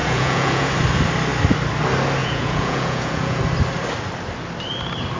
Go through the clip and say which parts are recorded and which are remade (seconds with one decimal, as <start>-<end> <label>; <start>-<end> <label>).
0.0-0.7 remade; 0.7-2.2 recorded; 2.2-3.4 remade; 3.4-5.2 recorded

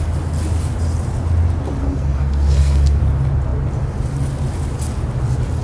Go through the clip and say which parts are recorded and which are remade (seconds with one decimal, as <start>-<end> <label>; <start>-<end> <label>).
0.0-1.8 recorded; 1.8-3.0 remade; 3.0-5.6 recorded

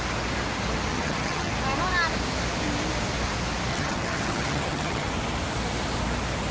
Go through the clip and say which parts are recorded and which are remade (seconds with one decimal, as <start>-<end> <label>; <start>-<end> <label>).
0.0-0.9 recorded; 0.9-1.5 remade; 1.5-3.7 recorded; 3.7-5.1 remade; 5.1-6.5 recorded

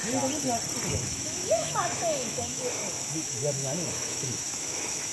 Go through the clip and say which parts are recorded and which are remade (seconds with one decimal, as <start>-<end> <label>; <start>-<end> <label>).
0.0-0.9 recorded; 0.9-5.1 remade

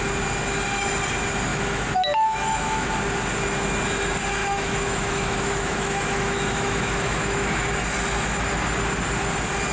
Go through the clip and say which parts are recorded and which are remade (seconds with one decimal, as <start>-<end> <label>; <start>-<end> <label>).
0.0-1.5 recorded; 1.5-2.9 remade; 2.9-4.4 recorded; 4.4-7.7 remade; 7.7-9.7 recorded

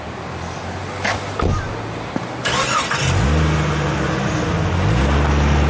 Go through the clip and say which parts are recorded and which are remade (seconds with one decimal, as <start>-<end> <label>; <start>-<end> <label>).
0.0-5.7 recorded

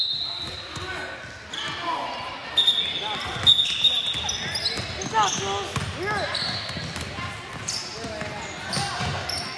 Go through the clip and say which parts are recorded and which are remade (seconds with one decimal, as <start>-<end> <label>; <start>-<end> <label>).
0.0-9.6 recorded

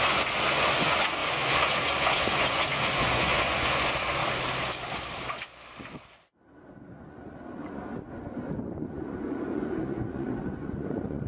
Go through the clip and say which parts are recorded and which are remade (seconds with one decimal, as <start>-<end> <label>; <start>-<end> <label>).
0.0-4.2 remade; 4.2-6.9 recorded; 6.9-7.8 remade; 7.8-8.8 recorded; 8.8-11.3 remade